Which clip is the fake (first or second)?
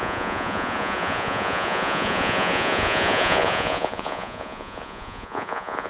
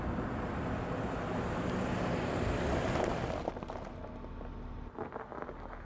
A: first